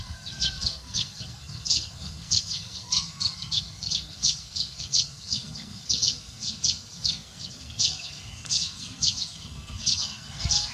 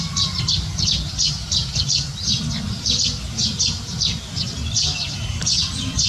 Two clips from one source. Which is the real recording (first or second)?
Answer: second